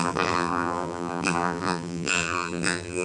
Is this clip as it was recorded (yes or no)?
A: no